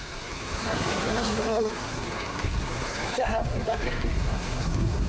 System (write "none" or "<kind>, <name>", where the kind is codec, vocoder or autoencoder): codec, SNAC